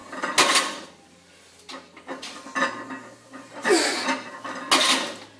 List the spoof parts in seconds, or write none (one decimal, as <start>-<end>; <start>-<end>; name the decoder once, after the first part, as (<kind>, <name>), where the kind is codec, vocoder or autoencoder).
none